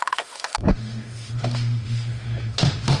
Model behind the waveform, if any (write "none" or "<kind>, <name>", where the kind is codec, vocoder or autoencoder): autoencoder, DAC-VAE